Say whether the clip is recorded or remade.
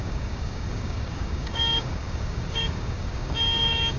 remade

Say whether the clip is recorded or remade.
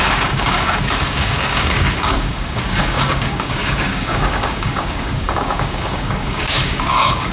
remade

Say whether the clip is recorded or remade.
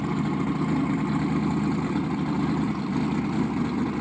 recorded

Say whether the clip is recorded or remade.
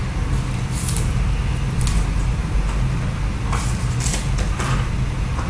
recorded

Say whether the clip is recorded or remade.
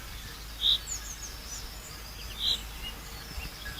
recorded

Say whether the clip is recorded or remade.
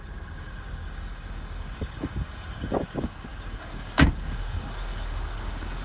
remade